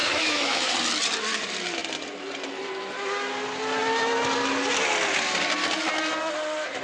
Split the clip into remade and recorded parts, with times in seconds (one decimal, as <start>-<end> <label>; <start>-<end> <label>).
0.0-0.7 remade; 0.7-6.8 recorded